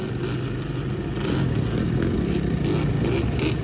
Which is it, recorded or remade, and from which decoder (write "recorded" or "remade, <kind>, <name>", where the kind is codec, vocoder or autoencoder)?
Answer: recorded